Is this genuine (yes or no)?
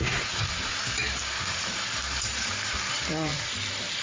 no